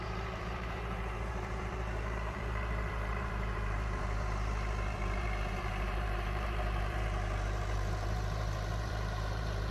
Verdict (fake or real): fake